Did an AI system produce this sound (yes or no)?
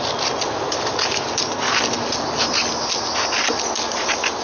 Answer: no